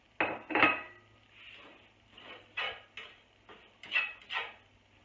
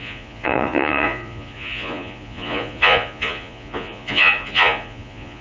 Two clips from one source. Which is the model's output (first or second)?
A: second